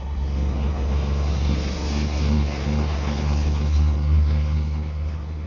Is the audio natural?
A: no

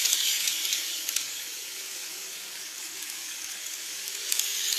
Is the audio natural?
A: no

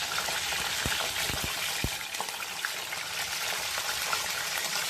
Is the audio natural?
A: yes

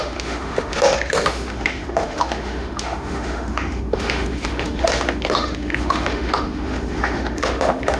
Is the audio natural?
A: no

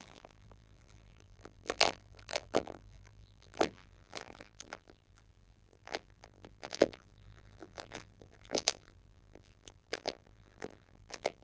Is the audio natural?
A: no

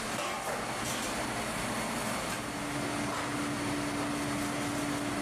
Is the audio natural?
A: yes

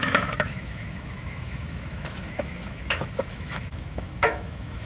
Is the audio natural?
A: no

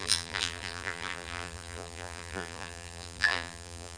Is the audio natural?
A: no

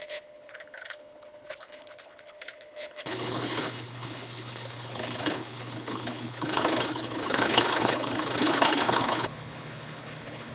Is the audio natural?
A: no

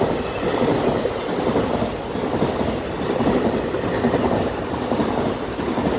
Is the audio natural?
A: yes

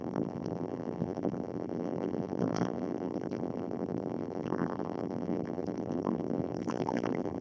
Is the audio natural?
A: no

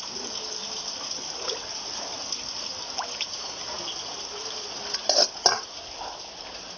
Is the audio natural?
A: yes